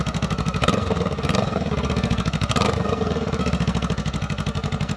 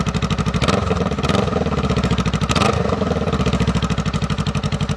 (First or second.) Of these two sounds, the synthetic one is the first